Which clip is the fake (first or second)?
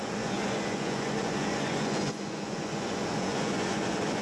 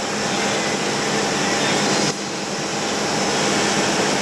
first